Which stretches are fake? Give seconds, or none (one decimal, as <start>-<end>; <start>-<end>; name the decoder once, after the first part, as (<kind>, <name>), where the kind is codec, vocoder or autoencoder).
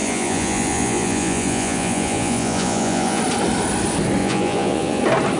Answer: 0.0-3.2 (vocoder, Vocos); 4.2-5.0